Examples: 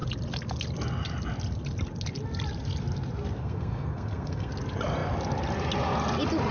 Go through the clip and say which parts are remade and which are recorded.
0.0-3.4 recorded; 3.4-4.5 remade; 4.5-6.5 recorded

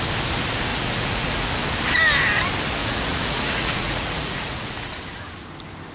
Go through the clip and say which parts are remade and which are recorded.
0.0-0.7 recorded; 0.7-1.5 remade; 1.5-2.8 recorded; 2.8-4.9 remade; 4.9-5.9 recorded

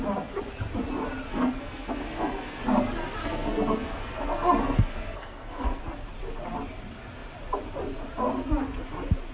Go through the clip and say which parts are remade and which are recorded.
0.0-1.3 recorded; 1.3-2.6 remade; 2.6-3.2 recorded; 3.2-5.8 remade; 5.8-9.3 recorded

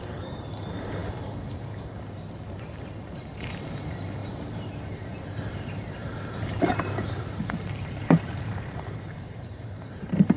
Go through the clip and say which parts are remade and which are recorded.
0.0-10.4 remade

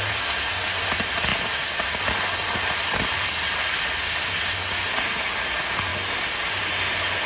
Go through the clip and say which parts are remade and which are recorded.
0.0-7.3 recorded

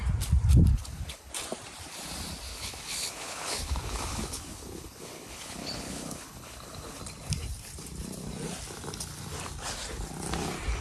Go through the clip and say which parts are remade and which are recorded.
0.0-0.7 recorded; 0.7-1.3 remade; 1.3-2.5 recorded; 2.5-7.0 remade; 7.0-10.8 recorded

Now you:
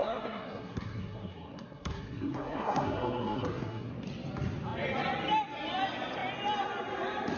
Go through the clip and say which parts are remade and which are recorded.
0.0-3.9 remade; 3.9-7.4 recorded